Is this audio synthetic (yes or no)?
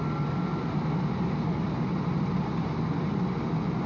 no